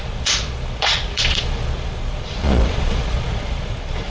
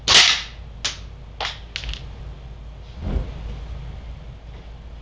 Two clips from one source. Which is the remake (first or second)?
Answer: first